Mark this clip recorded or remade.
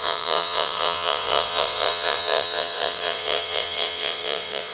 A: remade